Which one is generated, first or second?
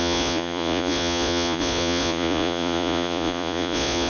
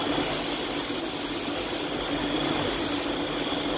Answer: first